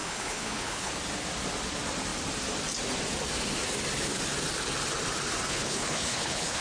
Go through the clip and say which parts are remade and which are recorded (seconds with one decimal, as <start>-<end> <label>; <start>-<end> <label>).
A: 0.0-0.9 remade; 0.9-5.5 recorded; 5.5-6.6 remade